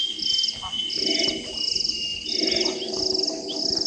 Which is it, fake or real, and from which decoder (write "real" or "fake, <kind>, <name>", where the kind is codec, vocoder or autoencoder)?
real